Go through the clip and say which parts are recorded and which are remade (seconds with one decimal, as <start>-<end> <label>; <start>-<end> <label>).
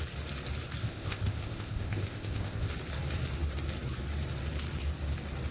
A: 0.0-0.8 recorded; 0.8-2.7 remade; 2.7-5.5 recorded